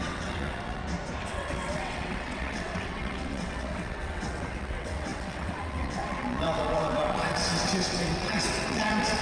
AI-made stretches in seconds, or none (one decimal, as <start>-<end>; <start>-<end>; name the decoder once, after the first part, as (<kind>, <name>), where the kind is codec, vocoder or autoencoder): 0.0-0.8 (vocoder, WaveNeXt); 1.3-9.2